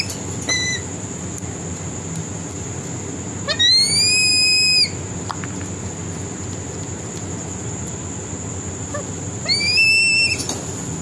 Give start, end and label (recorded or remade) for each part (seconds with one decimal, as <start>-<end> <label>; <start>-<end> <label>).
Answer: 0.0-11.0 recorded